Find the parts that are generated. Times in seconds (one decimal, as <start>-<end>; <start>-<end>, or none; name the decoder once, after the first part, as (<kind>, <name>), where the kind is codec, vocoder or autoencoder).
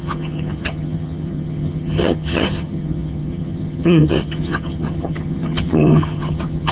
0.0-6.7 (vocoder, HiFi-GAN)